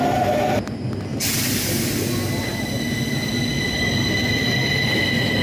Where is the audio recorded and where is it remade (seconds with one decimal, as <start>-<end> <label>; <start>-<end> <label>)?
0.0-5.4 recorded